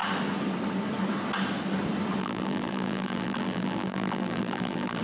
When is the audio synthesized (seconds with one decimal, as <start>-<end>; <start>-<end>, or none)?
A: 2.2-5.0